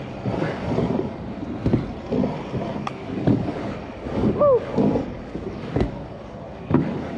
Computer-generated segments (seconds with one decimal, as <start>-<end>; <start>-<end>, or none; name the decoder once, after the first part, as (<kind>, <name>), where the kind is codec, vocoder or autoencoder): 0.4-1.4 (codec, DAC); 2.7-7.2